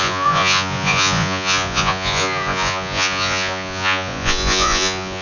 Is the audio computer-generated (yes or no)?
yes